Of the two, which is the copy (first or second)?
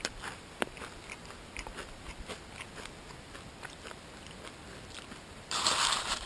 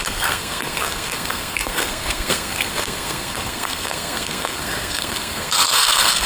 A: second